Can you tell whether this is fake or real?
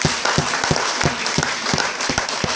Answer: real